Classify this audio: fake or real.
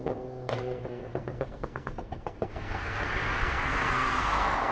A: fake